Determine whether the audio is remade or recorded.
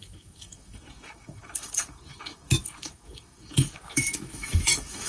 remade